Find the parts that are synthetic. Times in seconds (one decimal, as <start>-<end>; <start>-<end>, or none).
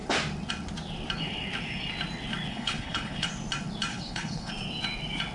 2.5-3.3; 3.9-4.5